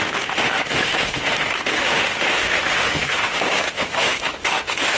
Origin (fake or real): fake